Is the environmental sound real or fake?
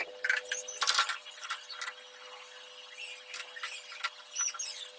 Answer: real